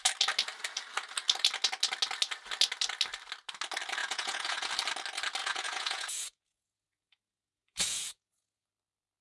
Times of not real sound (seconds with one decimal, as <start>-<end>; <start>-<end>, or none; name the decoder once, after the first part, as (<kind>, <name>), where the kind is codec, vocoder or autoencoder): 4.0-4.7 (vocoder, Vocos); 5.4-8.7